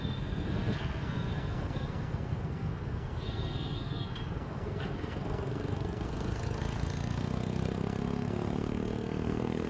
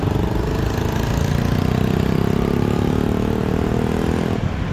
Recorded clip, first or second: second